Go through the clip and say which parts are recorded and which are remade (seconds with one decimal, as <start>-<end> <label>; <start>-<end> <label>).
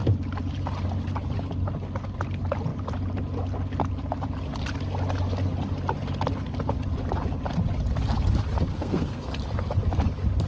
0.0-8.7 recorded; 8.7-9.3 remade; 9.3-10.5 recorded